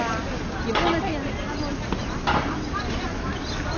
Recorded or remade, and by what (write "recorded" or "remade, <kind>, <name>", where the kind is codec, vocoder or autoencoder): recorded